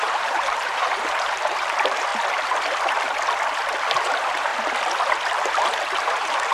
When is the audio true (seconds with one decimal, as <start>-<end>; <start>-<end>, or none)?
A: 2.1-4.0; 4.5-6.0